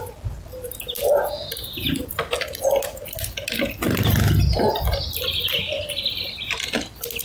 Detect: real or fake real